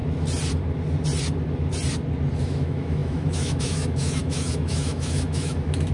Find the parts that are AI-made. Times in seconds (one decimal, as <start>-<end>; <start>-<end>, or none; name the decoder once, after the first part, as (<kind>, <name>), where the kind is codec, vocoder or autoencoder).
2.4-5.9 (autoencoder, DAC-VAE)